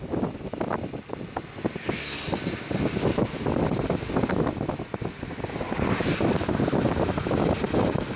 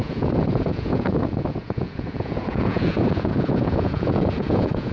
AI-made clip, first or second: second